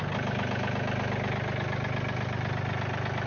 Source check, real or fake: real